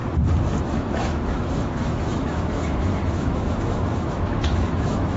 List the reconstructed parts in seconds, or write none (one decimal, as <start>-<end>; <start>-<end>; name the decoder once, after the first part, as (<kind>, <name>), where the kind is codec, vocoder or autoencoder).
0.6-5.2 (autoencoder, DAC-VAE)